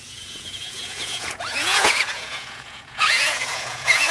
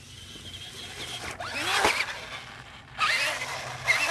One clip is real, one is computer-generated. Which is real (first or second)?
second